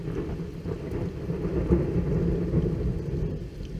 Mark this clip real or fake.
real